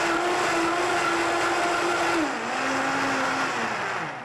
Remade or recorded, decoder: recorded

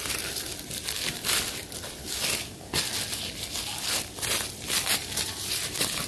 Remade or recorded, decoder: recorded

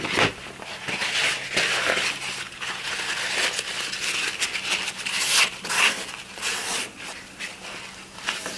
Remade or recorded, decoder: recorded